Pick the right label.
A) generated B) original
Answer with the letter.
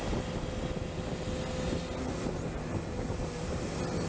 B